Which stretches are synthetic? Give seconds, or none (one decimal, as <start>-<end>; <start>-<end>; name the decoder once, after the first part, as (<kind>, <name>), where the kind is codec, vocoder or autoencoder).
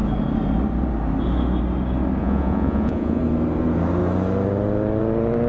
2.2-3.2 (vocoder, Vocos)